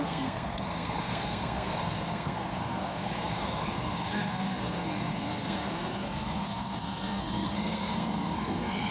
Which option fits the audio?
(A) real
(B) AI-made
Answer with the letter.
B